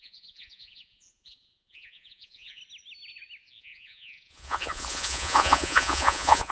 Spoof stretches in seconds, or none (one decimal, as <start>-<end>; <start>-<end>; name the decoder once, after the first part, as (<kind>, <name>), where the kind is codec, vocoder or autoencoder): 0.0-2.6 (vocoder, Vocos); 3.6-6.5